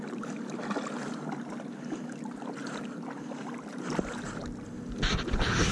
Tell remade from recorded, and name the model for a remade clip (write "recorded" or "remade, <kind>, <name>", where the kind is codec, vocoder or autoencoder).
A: recorded